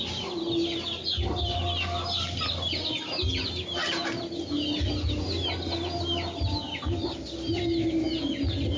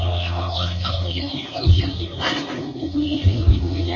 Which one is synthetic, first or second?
second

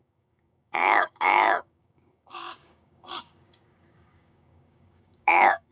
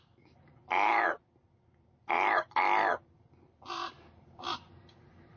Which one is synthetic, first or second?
first